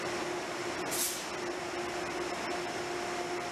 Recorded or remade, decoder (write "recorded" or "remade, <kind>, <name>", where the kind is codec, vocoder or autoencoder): recorded